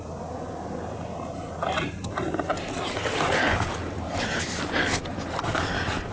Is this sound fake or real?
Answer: real